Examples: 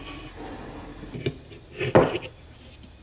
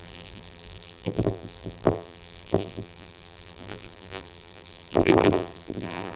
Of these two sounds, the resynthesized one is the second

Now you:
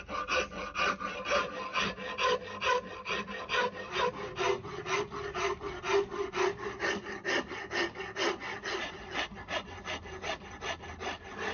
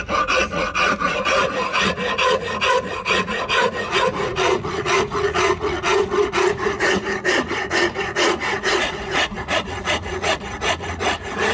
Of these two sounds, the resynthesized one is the second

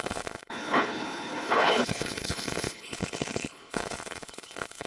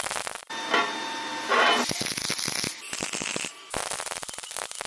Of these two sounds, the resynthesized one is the first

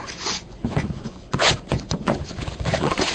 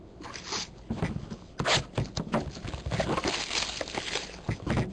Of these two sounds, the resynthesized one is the first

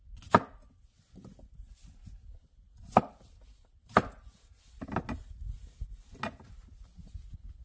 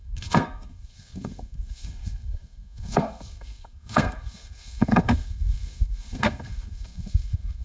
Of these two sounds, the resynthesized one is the second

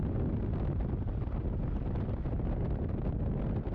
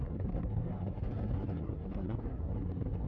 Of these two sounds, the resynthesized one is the second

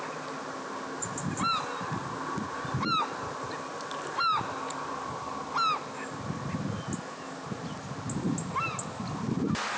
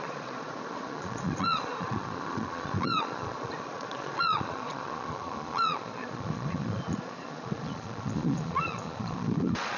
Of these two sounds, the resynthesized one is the second